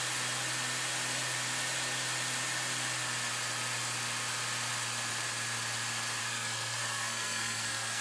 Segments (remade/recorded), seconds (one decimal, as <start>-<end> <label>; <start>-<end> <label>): 0.0-6.2 recorded; 6.2-8.0 remade